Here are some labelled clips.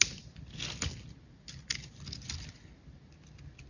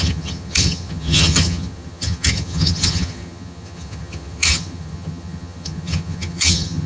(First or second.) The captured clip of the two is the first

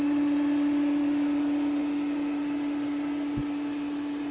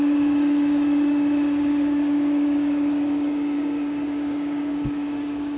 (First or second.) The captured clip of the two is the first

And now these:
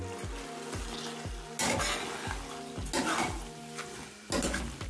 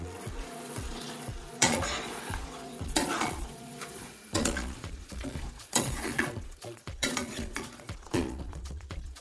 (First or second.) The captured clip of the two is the first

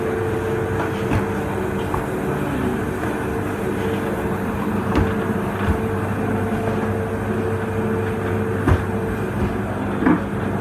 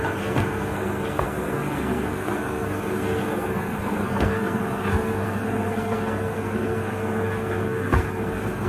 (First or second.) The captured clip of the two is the first